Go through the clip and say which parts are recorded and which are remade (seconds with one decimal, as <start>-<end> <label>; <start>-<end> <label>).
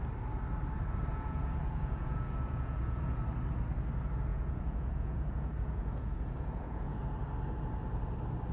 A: 0.0-1.1 recorded; 1.1-3.2 remade; 3.2-4.3 recorded; 4.3-7.0 remade; 7.0-8.5 recorded